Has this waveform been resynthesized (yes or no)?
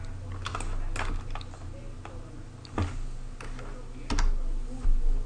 no